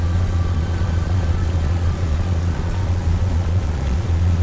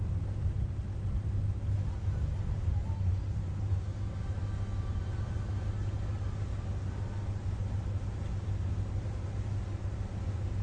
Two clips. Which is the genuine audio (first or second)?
second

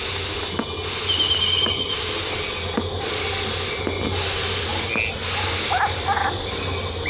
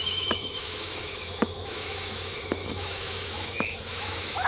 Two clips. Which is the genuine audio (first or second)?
first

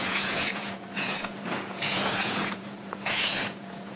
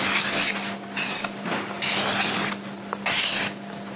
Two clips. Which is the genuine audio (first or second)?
second